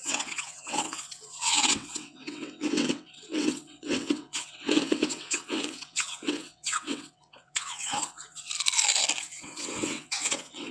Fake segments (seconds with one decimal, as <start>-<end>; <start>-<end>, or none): 0.0-8.5; 9.2-10.7